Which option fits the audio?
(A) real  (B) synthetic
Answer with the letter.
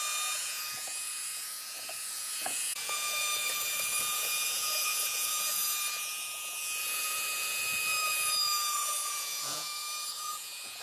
B